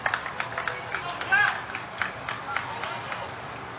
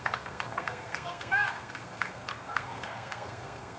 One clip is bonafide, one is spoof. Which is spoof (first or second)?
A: second